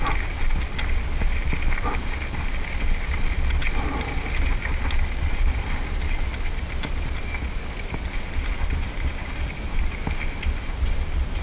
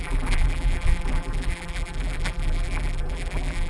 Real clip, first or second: first